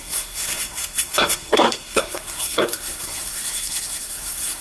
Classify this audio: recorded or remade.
remade